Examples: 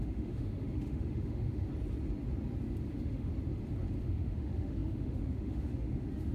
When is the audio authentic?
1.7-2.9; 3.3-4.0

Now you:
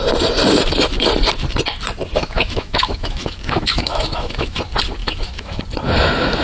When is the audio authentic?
0.0-2.2; 4.6-5.0; 5.6-6.4

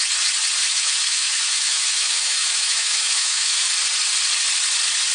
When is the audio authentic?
0.0-0.6; 3.7-5.1

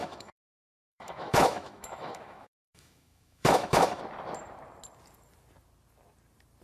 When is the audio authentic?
4.0-6.6

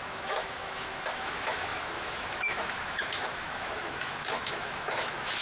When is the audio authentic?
none

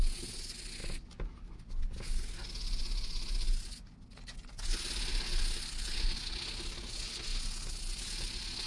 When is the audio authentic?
0.0-8.7